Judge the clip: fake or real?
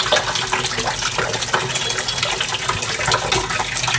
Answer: real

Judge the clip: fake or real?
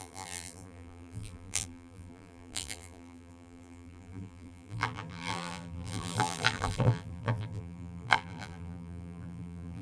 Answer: fake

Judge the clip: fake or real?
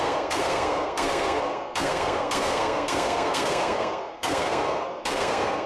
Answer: fake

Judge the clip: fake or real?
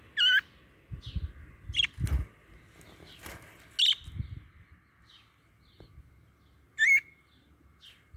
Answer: real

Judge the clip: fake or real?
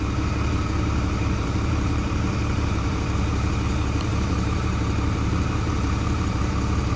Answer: fake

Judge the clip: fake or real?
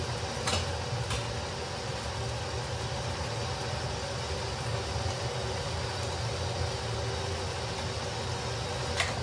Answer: real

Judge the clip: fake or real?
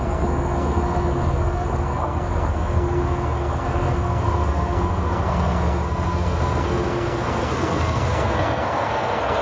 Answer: fake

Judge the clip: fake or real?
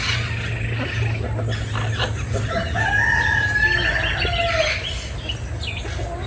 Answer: real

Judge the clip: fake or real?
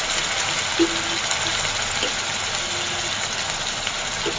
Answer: real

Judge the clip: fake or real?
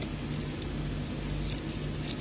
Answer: real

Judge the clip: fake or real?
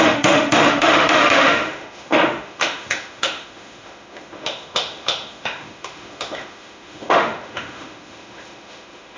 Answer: fake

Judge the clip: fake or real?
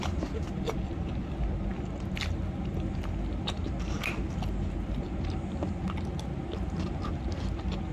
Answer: real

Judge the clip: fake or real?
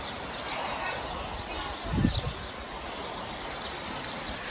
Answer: real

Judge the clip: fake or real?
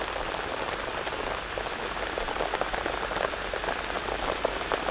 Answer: real